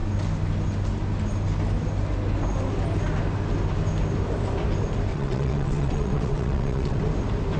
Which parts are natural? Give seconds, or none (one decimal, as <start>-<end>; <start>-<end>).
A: 0.0-5.1; 7.0-7.6